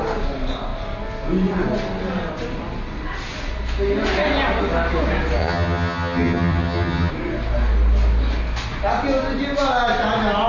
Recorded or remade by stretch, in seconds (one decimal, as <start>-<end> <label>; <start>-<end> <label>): 0.0-5.4 recorded; 5.4-7.1 remade; 7.1-10.5 recorded